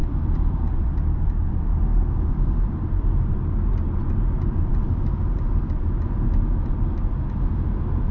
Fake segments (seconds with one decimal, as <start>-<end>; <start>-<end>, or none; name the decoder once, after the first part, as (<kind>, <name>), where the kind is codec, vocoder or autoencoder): 0.0-0.9 (vocoder, BigVGAN v2); 1.9-3.1